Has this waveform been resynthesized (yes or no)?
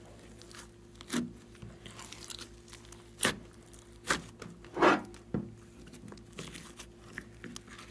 no